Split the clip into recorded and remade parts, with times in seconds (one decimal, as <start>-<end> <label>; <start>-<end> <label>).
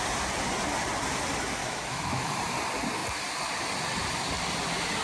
0.0-1.6 recorded; 1.6-2.3 remade; 2.3-5.0 recorded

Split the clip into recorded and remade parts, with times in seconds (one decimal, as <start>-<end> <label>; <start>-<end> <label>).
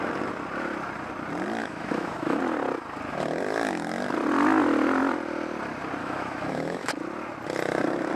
0.0-1.6 recorded; 1.6-2.4 remade; 2.4-6.0 recorded; 6.0-6.9 remade; 6.9-8.2 recorded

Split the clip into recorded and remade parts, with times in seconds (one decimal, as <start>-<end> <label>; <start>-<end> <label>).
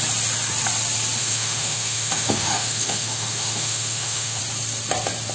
0.0-1.2 recorded; 1.2-4.4 remade; 4.4-5.3 recorded